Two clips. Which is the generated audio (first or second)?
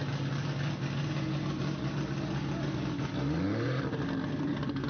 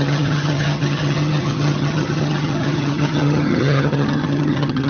second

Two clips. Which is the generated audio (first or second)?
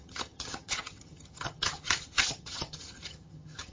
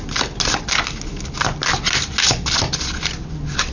first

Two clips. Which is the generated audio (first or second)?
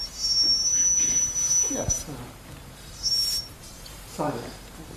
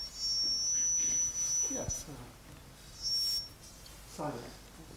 first